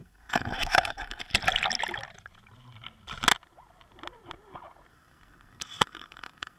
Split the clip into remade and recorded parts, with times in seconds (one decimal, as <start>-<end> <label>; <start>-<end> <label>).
0.0-1.3 remade; 1.3-4.9 recorded; 4.9-6.6 remade